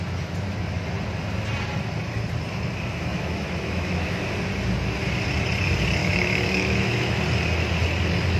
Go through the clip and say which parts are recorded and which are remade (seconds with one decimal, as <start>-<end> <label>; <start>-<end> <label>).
0.0-3.1 recorded; 3.1-4.2 remade; 4.2-6.0 recorded; 6.0-7.2 remade; 7.2-8.4 recorded